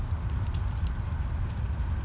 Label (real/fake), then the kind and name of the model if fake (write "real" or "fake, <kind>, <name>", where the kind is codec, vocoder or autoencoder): real